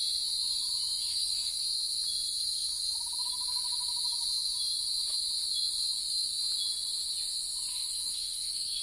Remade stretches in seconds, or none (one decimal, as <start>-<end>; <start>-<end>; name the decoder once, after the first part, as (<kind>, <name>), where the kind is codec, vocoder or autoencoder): 1.1-1.6 (codec, SNAC); 7.7-8.8